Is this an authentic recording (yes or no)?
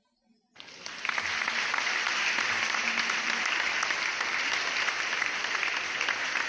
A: yes